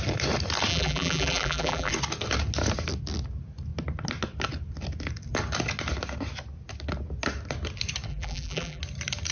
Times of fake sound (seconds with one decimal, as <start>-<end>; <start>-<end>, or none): 0.7-1.9; 8.1-8.8